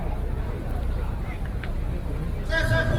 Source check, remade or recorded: recorded